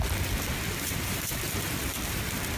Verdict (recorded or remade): recorded